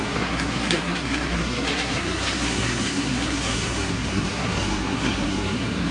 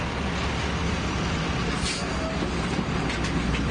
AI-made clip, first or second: first